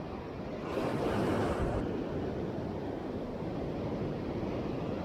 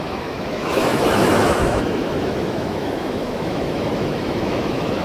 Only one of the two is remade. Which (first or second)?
second